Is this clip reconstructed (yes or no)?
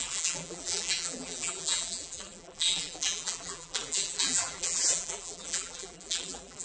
yes